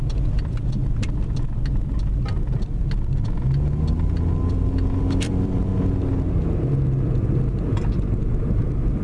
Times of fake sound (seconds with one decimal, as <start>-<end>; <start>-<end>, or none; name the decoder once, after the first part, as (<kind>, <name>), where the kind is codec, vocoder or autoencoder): 0.0-0.8 (vocoder, BigVGAN v2); 4.5-5.7; 6.3-9.0